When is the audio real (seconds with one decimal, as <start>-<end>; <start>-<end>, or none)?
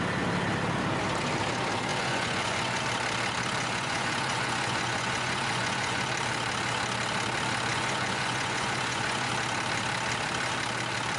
0.0-1.9; 2.8-3.6; 6.1-7.7; 9.3-11.2